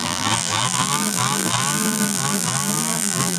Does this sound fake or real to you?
fake